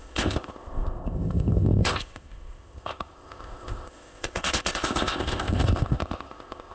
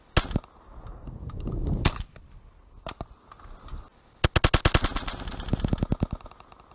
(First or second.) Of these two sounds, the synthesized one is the first